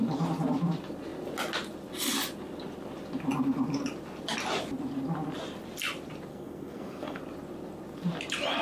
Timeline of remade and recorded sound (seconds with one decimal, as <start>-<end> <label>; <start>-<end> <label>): 0.0-6.3 recorded; 6.3-7.2 remade; 7.2-8.6 recorded